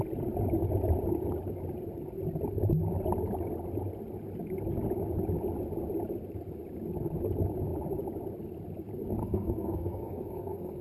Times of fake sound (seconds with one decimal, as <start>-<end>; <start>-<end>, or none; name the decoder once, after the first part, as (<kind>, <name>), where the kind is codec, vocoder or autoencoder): 9.2-10.8 (codec, SNAC)

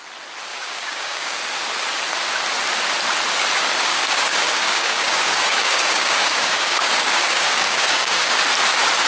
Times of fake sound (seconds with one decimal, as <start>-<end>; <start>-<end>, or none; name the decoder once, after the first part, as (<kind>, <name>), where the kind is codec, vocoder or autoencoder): 0.5-1.4 (codec, DAC); 3.9-8.3

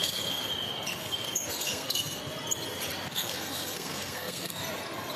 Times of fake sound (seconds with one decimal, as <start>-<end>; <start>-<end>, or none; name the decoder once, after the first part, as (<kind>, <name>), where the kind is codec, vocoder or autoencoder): 0.0-0.5 (codec, SNAC); 1.0-2.2; 3.1-4.6